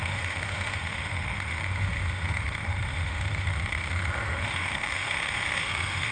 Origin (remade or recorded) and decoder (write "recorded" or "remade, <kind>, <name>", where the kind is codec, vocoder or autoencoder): remade, autoencoder, DAC-VAE